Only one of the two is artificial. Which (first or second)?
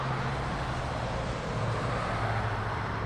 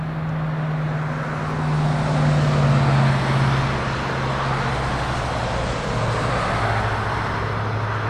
first